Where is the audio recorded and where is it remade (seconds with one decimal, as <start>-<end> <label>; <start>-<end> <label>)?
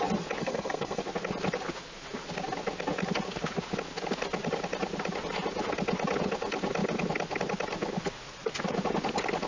0.0-0.4 recorded; 0.4-1.0 remade; 1.0-9.5 recorded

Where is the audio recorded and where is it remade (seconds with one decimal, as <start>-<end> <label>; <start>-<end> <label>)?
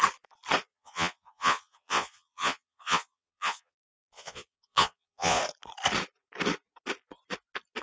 0.0-0.7 recorded; 0.7-5.4 remade; 5.4-7.8 recorded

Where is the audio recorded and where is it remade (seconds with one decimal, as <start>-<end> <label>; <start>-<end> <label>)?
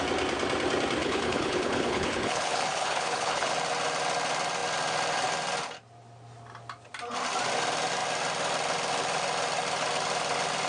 0.0-1.0 recorded; 1.0-3.5 remade; 3.5-10.7 recorded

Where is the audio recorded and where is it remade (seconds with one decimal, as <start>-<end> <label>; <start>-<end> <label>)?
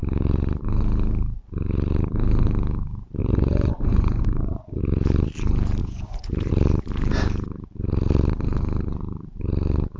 0.0-3.2 recorded; 3.2-4.8 remade; 4.8-5.8 recorded; 5.8-6.5 remade; 6.5-10.0 recorded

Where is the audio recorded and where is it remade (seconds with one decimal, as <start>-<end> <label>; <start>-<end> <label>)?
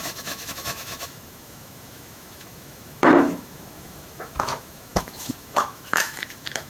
0.0-6.7 remade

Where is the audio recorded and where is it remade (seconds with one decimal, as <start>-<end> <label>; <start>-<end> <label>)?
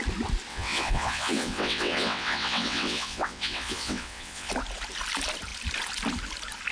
0.0-0.5 recorded; 0.5-4.5 remade; 4.5-6.7 recorded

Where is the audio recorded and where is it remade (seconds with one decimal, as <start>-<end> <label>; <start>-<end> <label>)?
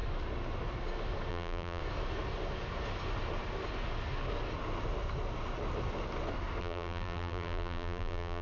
0.0-1.3 recorded; 1.3-1.8 remade; 1.8-6.6 recorded; 6.6-8.4 remade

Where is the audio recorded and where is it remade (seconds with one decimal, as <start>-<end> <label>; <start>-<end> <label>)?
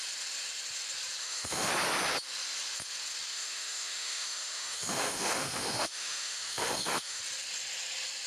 0.0-1.2 recorded; 1.2-1.7 remade; 1.7-3.3 recorded; 3.3-7.2 remade; 7.2-8.3 recorded